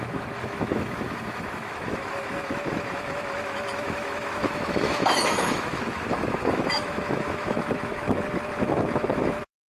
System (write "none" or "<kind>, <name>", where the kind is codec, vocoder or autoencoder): autoencoder, DAC-VAE